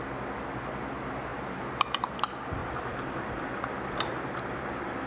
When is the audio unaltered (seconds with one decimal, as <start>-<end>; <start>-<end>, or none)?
0.0-1.3; 2.1-2.6; 3.5-5.1